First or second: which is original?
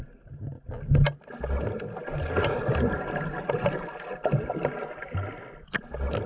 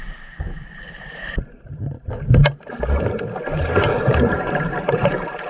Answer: first